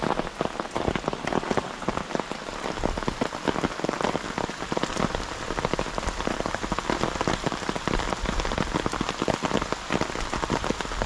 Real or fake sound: real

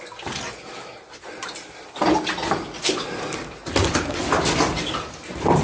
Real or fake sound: real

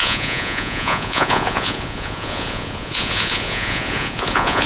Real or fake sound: fake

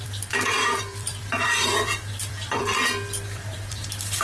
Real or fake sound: fake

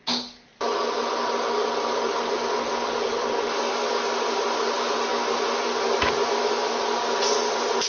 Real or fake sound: real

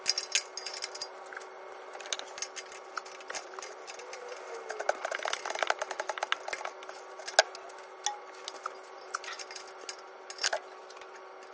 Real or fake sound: real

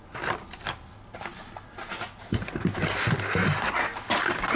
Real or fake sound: real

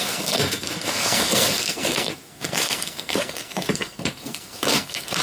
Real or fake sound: fake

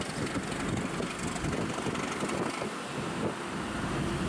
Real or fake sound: real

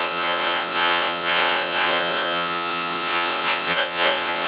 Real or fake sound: fake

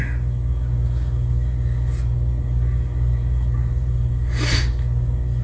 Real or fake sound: real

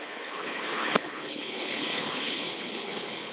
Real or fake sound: fake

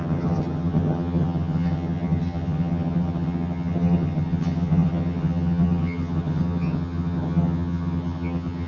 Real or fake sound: fake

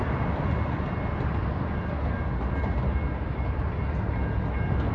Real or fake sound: real